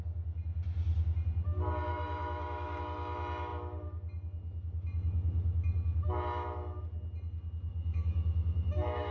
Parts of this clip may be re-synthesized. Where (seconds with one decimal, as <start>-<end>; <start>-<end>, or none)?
1.9-2.8; 7.7-9.1